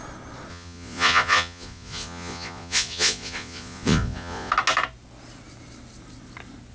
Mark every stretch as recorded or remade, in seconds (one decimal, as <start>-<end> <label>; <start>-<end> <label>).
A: 0.0-0.5 recorded; 0.5-4.5 remade; 4.5-6.7 recorded